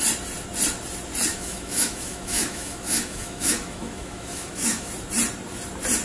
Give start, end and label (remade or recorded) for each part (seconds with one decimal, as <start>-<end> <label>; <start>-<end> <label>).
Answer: 0.0-1.3 recorded; 1.3-4.9 remade; 4.9-6.0 recorded